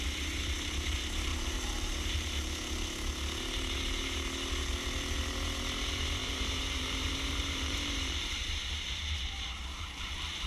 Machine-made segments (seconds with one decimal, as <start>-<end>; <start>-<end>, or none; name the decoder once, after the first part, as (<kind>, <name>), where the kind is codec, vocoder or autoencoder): 1.3-2.5 (vocoder, BigVGAN v2); 6.2-10.1